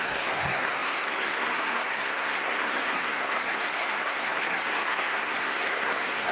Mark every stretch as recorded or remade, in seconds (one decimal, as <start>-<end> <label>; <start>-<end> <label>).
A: 0.0-6.3 remade